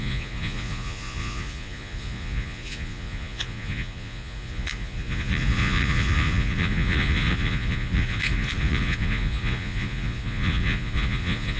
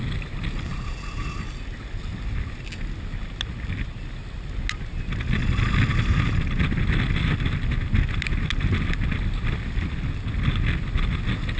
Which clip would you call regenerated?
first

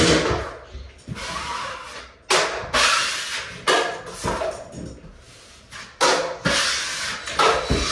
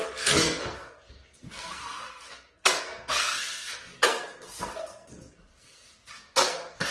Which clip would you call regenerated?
second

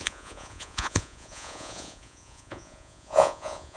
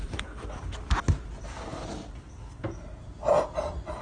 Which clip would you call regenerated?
first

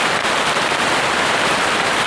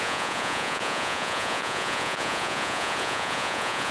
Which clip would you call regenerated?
second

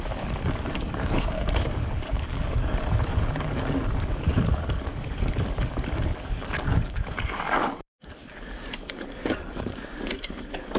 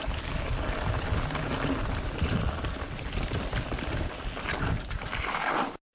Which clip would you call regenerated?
first